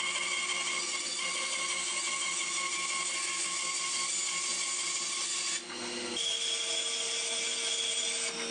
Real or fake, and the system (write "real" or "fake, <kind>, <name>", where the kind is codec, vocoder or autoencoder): real